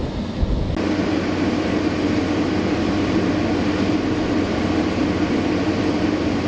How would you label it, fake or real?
real